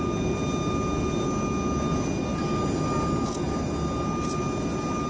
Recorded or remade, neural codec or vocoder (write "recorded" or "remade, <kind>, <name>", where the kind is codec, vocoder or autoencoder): recorded